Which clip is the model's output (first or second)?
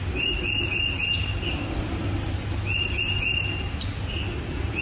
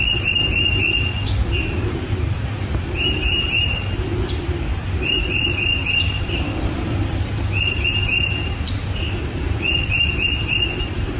second